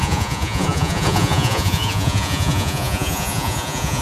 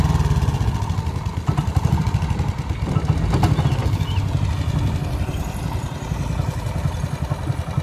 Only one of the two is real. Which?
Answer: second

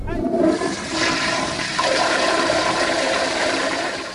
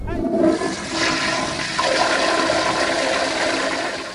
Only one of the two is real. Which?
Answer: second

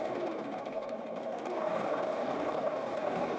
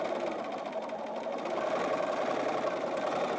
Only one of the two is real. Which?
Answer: second